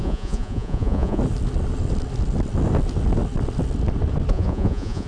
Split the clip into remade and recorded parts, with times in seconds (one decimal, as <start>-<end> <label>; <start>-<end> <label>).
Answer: 0.0-1.2 remade; 1.2-4.3 recorded; 4.3-5.1 remade